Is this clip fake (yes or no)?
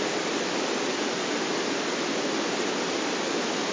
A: no